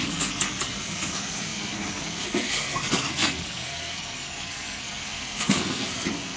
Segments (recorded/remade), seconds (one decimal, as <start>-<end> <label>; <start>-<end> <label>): 0.0-6.4 remade